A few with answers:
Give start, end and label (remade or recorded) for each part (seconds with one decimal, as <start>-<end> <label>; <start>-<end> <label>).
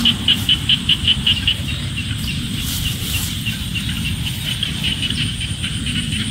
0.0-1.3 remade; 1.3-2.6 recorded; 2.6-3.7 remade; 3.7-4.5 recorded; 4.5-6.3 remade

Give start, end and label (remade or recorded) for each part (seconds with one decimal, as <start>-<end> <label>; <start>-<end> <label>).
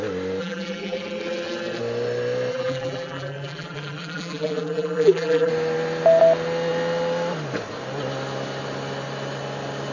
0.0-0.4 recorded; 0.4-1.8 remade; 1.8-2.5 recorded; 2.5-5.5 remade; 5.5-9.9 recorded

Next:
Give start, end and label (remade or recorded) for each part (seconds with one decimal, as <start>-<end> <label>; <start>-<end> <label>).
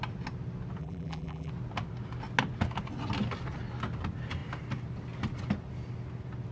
0.0-0.8 recorded; 0.8-1.5 remade; 1.5-6.5 recorded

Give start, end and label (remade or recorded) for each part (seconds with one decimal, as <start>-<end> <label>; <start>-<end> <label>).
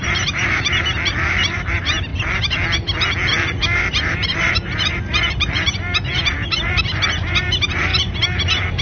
0.0-2.1 remade; 2.1-4.0 recorded; 4.0-7.9 remade; 7.9-8.8 recorded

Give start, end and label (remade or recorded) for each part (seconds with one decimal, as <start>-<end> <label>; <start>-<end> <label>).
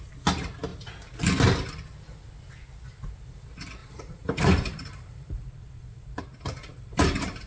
0.0-3.8 recorded; 3.8-6.2 remade; 6.2-6.7 recorded; 6.7-7.5 remade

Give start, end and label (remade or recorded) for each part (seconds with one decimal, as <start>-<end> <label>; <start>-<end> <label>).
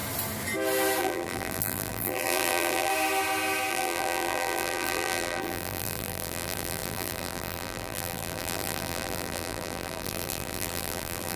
0.0-1.0 recorded; 1.0-2.9 remade; 2.9-3.7 recorded; 3.7-11.4 remade